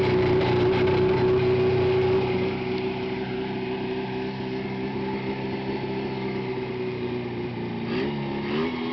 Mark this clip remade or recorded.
recorded